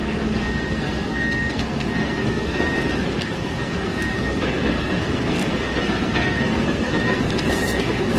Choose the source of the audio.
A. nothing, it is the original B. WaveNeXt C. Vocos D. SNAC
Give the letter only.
D